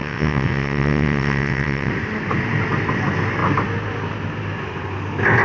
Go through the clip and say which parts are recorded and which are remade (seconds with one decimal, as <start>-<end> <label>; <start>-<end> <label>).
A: 0.0-1.9 remade; 1.9-5.4 recorded